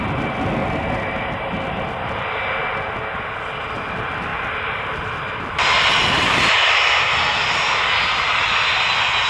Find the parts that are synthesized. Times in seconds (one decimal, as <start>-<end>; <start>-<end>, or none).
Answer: none